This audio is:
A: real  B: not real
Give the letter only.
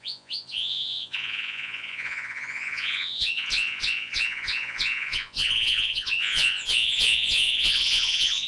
B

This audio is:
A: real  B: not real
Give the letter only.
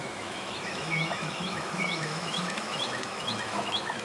B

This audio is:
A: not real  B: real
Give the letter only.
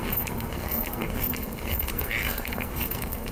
A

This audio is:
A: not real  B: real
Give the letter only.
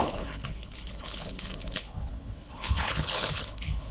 A